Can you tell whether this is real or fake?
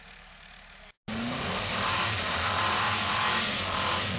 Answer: real